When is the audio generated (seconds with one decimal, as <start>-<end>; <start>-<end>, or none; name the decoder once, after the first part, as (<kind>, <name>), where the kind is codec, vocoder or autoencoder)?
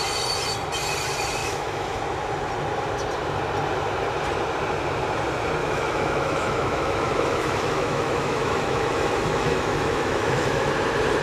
1.4-2.0 (autoencoder, DAC-VAE); 5.6-10.7